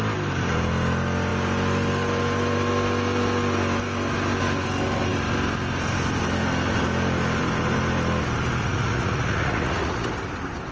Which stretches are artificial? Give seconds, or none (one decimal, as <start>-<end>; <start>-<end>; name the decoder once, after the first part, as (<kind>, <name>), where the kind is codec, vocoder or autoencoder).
8.6-10.1 (vocoder, Vocos)